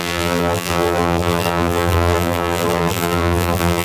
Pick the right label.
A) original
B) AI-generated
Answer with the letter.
B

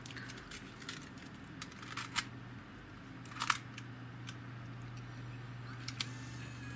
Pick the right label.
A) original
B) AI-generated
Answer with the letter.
A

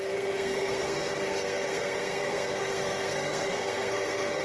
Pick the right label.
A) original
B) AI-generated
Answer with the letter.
B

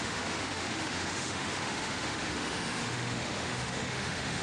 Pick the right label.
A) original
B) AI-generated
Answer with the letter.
B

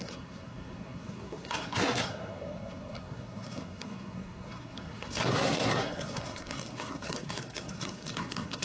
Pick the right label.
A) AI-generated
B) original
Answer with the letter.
A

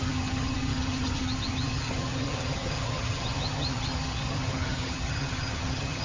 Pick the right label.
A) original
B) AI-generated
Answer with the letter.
B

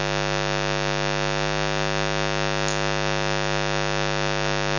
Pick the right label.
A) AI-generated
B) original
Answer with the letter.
B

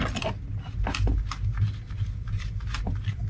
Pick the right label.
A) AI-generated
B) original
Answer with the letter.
B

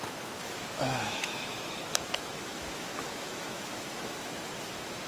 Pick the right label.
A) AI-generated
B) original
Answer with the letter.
A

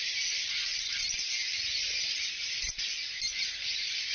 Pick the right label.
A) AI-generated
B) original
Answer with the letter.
A